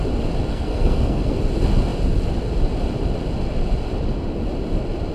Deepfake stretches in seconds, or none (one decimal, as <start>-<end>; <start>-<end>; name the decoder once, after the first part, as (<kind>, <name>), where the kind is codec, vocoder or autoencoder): 0.5-1.4 (codec, SNAC)